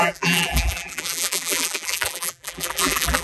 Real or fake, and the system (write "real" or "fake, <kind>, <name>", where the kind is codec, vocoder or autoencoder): fake, vocoder, BigVGAN v2